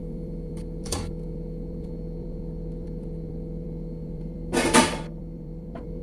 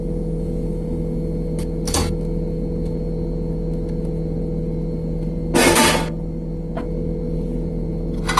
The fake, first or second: first